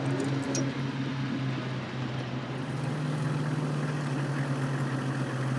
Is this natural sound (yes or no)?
yes